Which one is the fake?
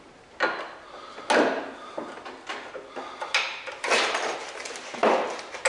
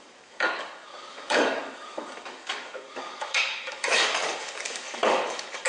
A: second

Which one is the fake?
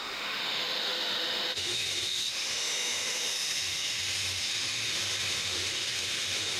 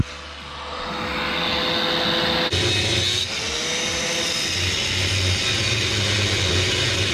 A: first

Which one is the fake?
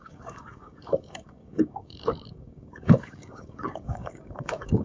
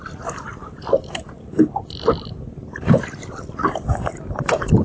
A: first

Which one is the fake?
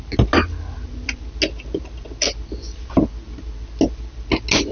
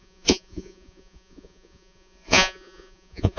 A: second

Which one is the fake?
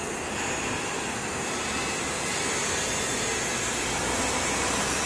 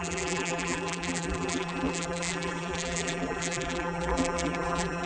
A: second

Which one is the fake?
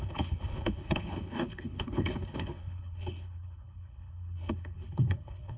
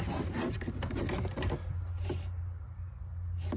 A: first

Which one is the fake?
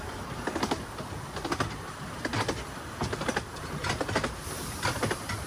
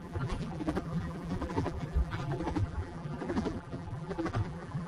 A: second